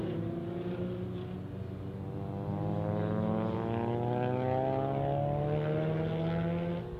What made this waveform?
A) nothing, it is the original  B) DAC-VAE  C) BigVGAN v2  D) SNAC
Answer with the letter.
A